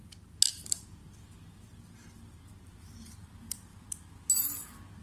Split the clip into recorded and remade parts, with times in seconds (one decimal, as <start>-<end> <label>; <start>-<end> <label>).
0.0-0.5 recorded; 0.5-3.7 remade; 3.7-4.4 recorded; 4.4-5.0 remade